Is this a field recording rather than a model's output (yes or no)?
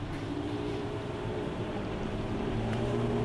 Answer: no